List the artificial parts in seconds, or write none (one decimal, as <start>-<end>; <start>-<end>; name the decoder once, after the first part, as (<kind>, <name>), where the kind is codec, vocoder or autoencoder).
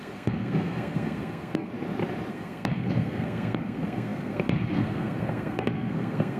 0.0-1.7 (codec, SNAC); 2.3-6.4